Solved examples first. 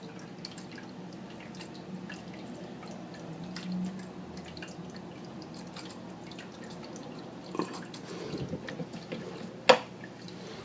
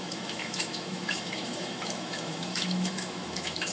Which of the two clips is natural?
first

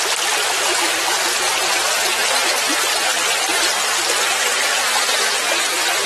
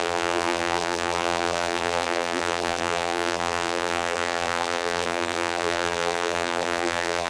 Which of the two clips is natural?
first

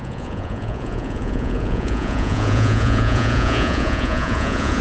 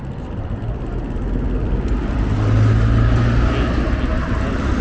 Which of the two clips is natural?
second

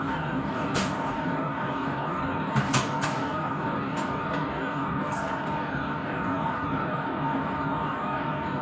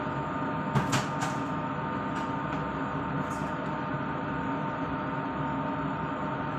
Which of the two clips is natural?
second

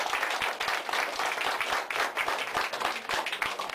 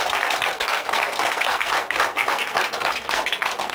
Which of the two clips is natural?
first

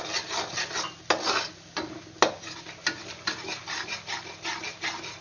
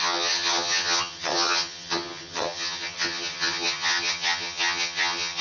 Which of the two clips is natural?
first